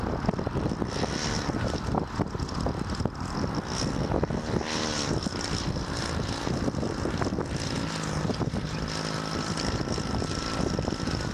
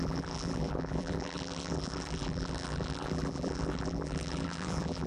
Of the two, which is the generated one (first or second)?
second